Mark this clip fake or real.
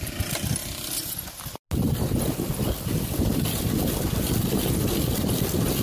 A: real